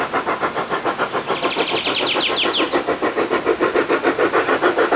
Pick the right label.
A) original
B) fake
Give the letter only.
A